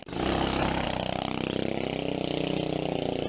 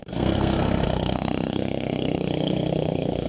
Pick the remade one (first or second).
second